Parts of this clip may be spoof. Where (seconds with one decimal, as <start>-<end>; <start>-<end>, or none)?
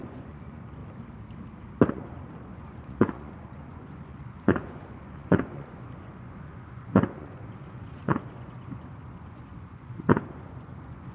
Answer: 0.0-0.8; 1.9-11.1